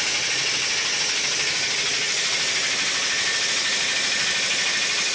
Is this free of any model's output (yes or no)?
yes